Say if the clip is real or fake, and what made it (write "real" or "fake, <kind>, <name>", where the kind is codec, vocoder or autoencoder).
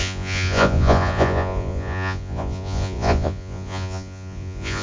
fake, vocoder, Vocos